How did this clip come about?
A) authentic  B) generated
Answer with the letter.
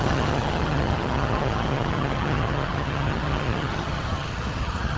B